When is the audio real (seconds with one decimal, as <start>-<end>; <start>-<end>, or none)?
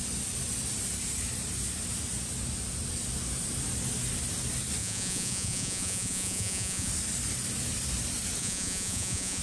0.0-4.8; 6.9-8.4